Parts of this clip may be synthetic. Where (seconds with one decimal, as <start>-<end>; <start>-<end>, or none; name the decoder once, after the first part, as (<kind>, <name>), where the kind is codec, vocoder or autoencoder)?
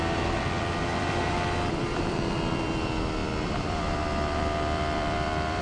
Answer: 0.0-3.2 (vocoder, BigVGAN v2); 3.7-5.6